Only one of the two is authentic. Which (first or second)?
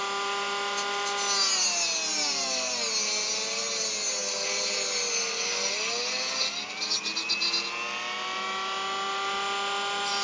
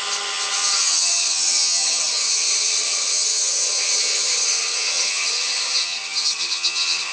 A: first